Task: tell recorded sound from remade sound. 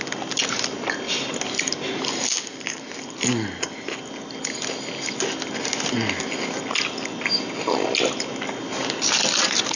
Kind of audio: recorded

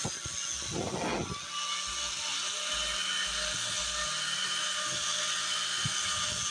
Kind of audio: recorded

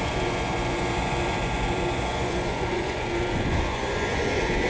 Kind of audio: remade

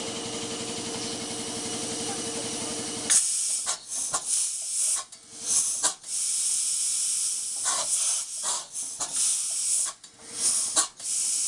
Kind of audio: recorded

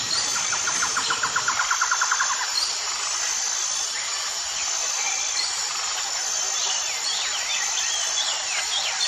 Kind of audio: recorded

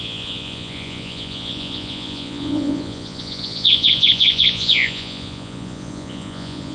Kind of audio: remade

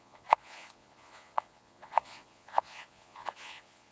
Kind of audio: remade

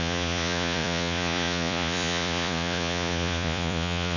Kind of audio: remade